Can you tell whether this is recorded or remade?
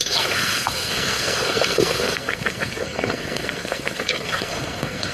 remade